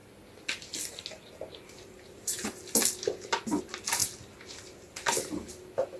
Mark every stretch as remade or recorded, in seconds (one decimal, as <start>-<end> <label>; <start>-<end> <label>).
0.0-6.0 recorded